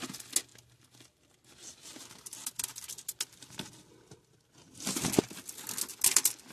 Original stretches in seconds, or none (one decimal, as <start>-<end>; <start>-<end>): 0.0-6.5